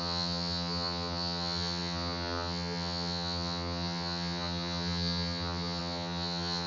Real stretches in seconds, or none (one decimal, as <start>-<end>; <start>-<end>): none